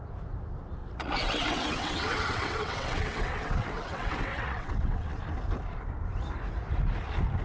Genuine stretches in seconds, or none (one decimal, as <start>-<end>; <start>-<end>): 0.0-0.8; 5.2-7.4